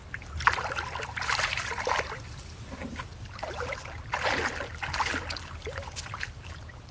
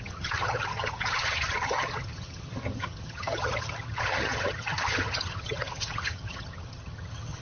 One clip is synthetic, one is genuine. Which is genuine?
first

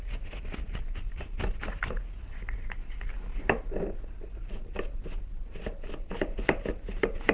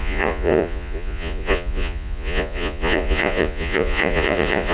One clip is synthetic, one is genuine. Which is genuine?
first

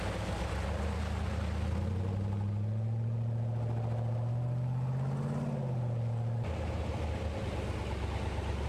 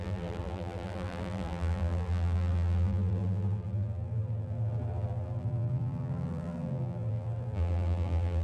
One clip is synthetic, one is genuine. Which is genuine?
first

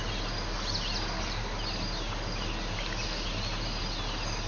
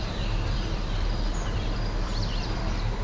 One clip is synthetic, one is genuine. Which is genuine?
first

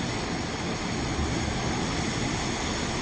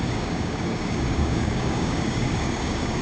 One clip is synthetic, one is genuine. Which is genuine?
first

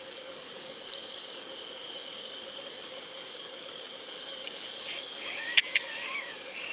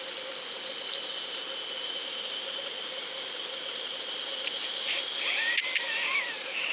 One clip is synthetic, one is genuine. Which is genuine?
second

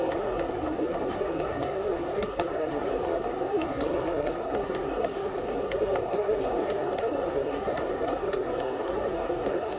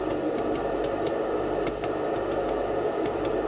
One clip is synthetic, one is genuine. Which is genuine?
second